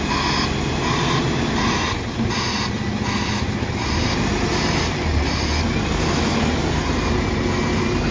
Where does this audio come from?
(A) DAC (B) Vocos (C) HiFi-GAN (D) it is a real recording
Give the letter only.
D